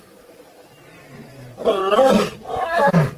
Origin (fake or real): real